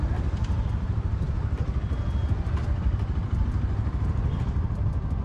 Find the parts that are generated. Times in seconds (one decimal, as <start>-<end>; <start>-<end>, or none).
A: 2.2-3.4